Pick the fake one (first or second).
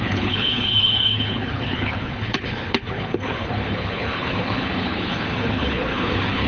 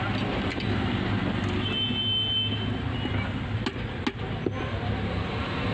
first